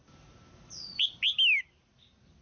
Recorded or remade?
recorded